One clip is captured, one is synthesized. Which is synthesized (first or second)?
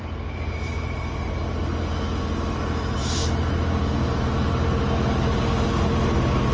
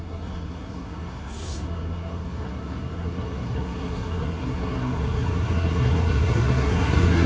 second